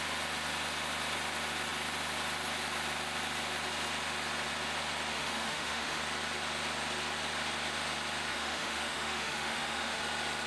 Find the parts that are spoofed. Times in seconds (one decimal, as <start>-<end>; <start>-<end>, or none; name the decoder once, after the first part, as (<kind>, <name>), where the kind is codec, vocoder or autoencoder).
5.1-6.0 (autoencoder, DAC-VAE); 8.3-10.0